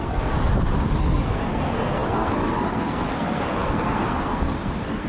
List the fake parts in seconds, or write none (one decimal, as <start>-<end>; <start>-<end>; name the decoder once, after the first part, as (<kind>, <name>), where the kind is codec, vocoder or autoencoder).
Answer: 0.0-0.5 (codec, SNAC); 1.0-5.1

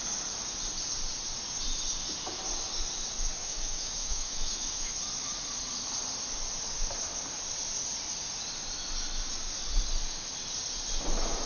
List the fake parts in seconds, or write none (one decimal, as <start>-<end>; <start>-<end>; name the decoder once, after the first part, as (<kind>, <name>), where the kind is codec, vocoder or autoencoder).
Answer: 3.4-4.9 (autoencoder, DAC-VAE)

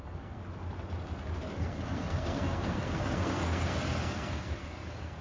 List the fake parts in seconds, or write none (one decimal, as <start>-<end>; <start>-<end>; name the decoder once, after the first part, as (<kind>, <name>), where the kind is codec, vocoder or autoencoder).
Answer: 0.0-0.4 (codec, SNAC); 1.4-5.2

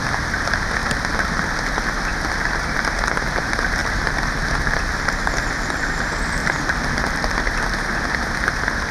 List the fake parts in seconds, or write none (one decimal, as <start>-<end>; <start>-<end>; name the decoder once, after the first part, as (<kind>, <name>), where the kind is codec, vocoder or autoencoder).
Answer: 3.8-4.8 (vocoder, BigVGAN v2); 6.4-7.5

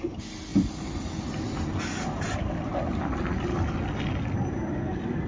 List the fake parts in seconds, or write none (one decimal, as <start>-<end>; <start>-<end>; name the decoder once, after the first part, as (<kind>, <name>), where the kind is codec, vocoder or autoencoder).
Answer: none

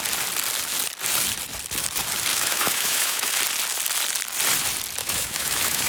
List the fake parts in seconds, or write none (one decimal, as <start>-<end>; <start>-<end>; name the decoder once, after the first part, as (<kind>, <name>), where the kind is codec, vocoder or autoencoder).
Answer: 2.3-3.4 (autoencoder, DAC-VAE); 5.0-5.9